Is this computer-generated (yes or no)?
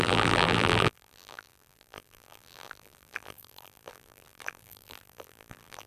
yes